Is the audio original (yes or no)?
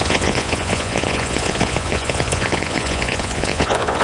no